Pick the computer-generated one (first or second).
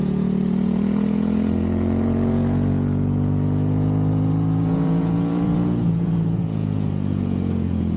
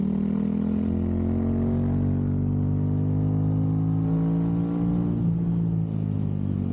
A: first